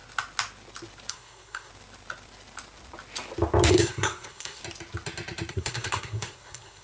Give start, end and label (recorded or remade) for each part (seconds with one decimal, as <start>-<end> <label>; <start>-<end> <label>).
0.0-1.1 recorded; 1.1-1.7 remade; 1.7-3.7 recorded; 3.7-4.6 remade; 4.6-5.5 recorded; 5.5-6.8 remade